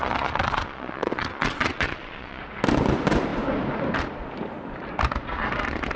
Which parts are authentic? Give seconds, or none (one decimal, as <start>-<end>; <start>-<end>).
2.4-6.0